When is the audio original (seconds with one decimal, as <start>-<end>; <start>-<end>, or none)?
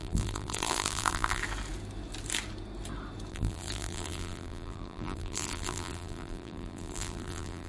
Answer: 1.4-3.3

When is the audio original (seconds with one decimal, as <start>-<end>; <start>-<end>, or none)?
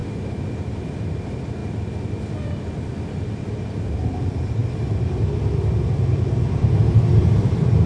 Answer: 0.0-1.0; 1.6-3.8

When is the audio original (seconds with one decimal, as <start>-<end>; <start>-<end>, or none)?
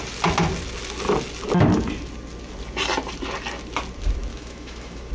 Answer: 0.0-4.3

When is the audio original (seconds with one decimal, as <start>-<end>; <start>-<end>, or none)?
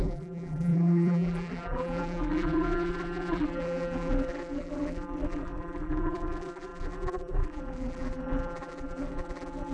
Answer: none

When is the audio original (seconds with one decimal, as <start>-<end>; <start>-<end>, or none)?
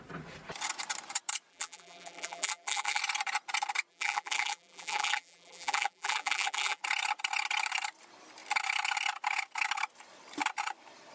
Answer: 0.0-1.5; 3.0-3.9; 6.8-11.1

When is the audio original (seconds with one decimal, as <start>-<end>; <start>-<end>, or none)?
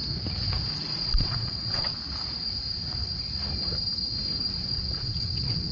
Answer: 0.0-1.0; 1.9-4.5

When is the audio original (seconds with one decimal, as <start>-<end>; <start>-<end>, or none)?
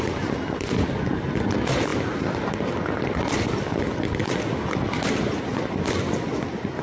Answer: 0.0-6.8